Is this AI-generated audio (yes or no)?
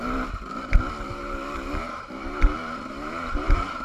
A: yes